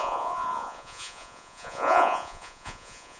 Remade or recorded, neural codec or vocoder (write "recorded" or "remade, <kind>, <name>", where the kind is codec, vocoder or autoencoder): remade, vocoder, Vocos